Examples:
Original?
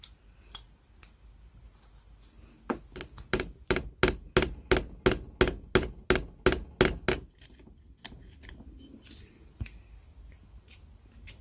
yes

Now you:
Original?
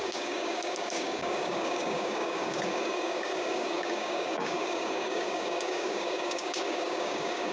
no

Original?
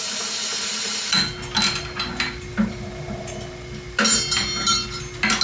yes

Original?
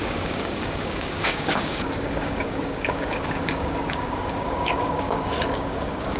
no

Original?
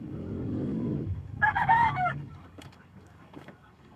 no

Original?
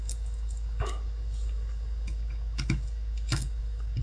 no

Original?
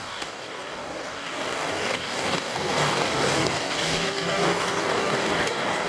no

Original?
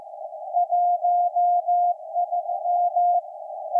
yes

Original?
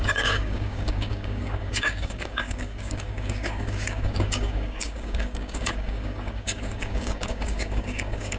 no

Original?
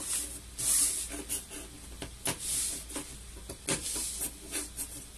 yes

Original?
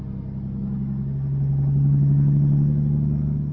yes